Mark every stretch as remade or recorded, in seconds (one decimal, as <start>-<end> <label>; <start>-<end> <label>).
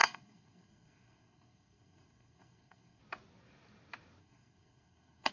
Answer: 0.0-3.0 remade; 3.0-4.2 recorded; 4.2-5.3 remade